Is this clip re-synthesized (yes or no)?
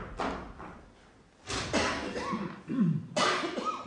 no